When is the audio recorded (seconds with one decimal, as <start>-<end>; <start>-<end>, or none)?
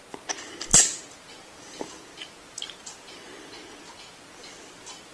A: 0.0-5.1